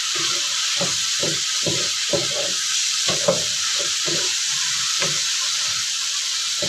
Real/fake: fake